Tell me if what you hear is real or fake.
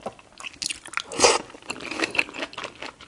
real